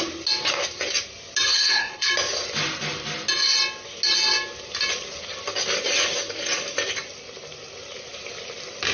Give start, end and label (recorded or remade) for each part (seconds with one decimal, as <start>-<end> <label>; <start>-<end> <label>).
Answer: 0.0-1.5 recorded; 1.5-2.1 remade; 2.1-8.9 recorded